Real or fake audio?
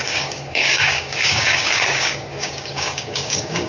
fake